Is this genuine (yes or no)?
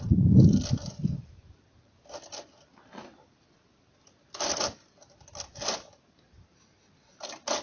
yes